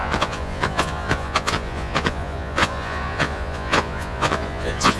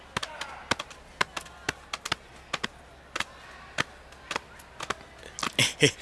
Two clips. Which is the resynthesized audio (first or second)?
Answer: first